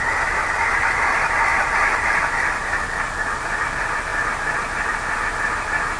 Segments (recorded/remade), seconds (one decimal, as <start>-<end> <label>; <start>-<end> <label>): 0.0-6.0 recorded